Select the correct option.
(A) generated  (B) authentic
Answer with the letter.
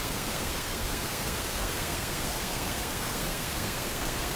A